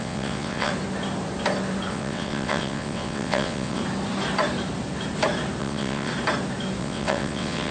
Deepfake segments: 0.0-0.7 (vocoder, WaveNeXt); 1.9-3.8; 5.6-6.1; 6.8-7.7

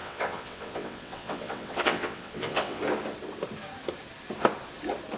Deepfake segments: 0.0-2.8 (vocoder, WaveNeXt)